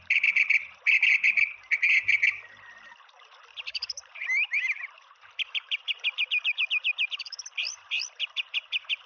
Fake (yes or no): yes